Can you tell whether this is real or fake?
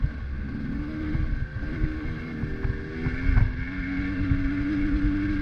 real